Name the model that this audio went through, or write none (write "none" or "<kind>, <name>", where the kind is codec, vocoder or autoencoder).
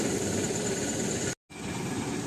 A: none